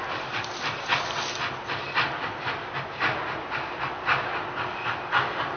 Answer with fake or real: real